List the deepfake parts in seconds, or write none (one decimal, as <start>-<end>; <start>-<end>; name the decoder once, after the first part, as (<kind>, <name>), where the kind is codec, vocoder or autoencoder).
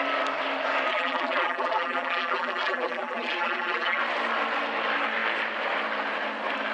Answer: 0.9-4.0 (vocoder, BigVGAN v2)